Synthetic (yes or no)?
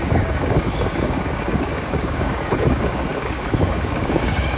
yes